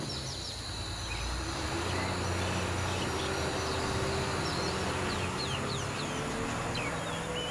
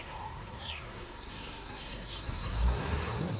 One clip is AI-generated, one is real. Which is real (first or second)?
first